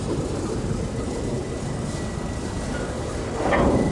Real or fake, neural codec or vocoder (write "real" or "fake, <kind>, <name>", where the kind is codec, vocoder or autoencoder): real